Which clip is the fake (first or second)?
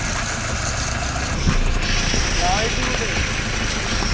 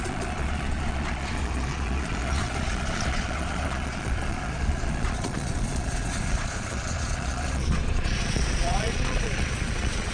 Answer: second